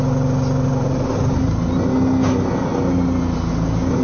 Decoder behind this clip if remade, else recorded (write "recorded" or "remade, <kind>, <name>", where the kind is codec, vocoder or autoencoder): recorded